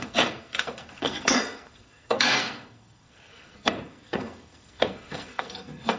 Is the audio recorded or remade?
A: remade